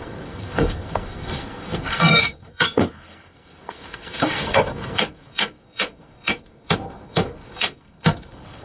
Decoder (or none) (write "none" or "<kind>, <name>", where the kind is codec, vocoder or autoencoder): codec, SNAC